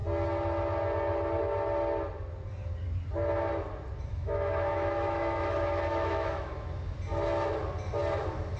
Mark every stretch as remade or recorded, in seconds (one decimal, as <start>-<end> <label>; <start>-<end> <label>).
0.0-4.1 recorded; 4.1-6.5 remade; 6.5-8.6 recorded